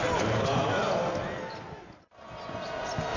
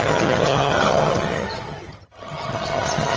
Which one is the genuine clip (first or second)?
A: first